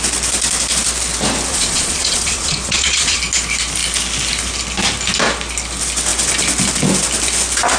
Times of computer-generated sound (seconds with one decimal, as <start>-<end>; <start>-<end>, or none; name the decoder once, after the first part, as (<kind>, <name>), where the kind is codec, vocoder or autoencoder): 1.5-3.2 (vocoder, Vocos)